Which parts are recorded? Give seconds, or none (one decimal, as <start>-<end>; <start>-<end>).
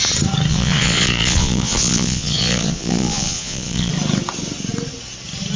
0.0-0.5; 3.9-5.6